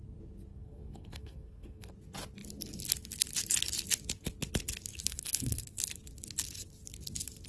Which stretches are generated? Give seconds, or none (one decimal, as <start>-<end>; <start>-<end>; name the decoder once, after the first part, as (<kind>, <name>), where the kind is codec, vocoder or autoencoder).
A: 0.5-1.9 (codec, SNAC); 4.9-5.8